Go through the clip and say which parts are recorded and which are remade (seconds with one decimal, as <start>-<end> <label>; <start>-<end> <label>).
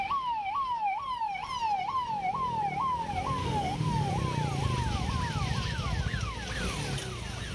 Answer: 0.0-3.4 recorded; 3.4-4.1 remade; 4.1-7.5 recorded